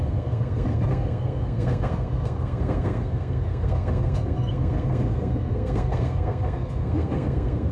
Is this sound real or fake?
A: fake